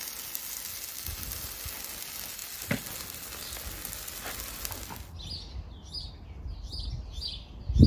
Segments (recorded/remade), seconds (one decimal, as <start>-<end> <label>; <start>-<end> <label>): 0.0-7.9 recorded